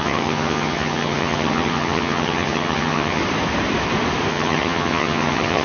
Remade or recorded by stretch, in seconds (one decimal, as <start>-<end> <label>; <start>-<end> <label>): 0.0-3.2 remade; 3.2-4.3 recorded; 4.3-5.6 remade